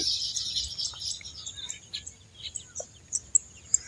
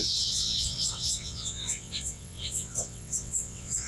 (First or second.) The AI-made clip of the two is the second